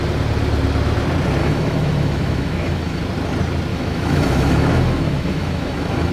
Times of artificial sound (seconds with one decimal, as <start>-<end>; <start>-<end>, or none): 1.4-3.0; 3.7-6.1